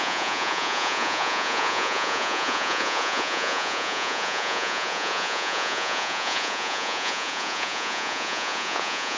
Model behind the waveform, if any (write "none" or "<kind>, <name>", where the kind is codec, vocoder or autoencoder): vocoder, Vocos